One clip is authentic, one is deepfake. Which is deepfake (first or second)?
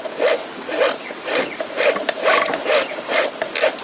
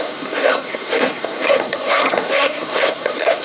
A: second